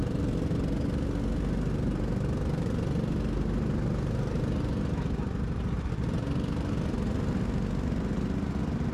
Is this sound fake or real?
real